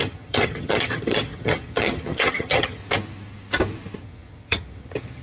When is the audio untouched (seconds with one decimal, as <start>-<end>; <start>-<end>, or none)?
2.8-4.0